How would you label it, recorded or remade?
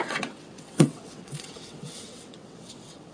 remade